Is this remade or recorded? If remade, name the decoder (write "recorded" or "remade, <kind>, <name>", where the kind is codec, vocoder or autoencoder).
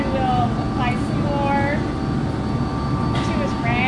recorded